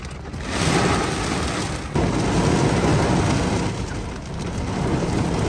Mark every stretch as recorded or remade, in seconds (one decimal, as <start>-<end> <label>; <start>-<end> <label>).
0.0-5.5 recorded